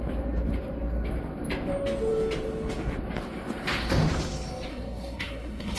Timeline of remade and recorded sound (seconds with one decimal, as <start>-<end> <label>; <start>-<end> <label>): 0.0-4.7 recorded; 4.7-5.8 remade